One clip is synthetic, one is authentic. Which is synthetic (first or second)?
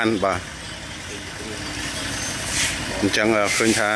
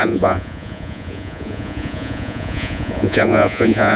second